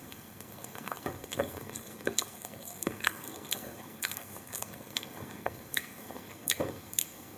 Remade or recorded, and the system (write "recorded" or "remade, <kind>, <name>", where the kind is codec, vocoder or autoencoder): remade, codec, SNAC